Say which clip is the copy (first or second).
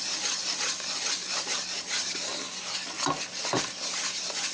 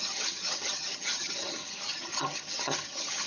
second